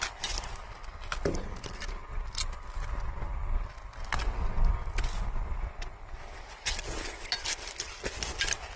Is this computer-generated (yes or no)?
no